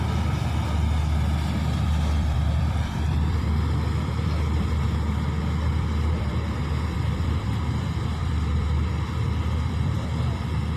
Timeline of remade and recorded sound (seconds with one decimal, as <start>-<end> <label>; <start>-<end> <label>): 0.0-0.4 remade; 0.4-1.9 recorded; 1.9-10.8 remade